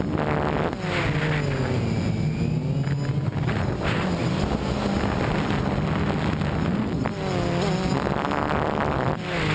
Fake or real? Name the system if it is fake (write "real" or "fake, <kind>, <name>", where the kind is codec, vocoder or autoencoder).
real